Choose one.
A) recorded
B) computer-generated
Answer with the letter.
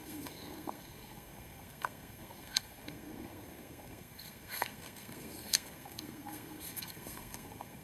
B